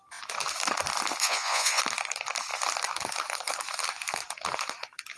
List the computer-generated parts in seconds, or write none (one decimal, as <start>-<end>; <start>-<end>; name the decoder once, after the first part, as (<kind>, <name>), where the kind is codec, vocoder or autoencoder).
1.2-1.8 (vocoder, Vocos)